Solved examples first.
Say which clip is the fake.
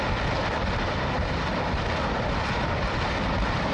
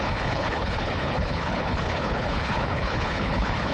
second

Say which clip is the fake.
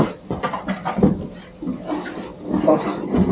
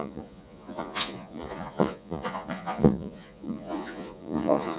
second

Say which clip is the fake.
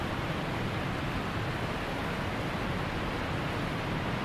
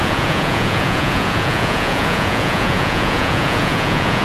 second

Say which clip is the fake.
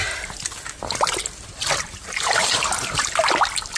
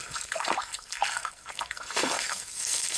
second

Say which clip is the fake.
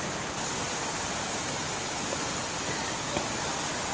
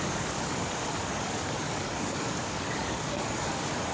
second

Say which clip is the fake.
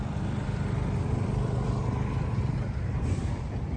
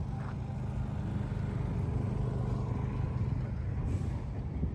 first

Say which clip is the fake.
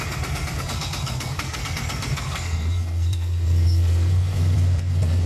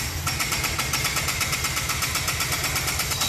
first